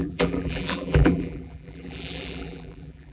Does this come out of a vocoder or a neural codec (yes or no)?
yes